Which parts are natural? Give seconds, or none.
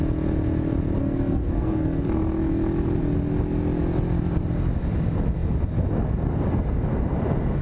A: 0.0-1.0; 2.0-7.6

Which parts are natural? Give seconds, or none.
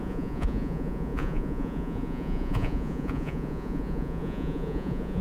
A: none